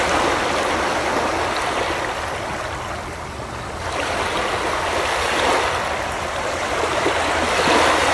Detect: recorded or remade recorded